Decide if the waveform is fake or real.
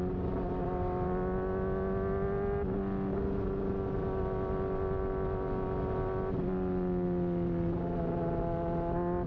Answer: real